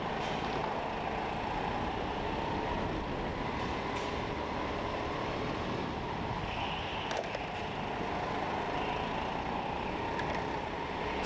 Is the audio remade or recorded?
recorded